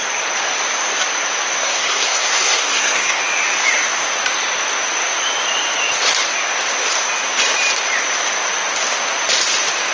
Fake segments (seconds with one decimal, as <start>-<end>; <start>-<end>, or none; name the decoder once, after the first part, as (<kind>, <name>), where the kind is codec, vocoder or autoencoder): 1.6-3.2 (codec, SNAC)